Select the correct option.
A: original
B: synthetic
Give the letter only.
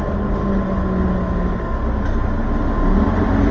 A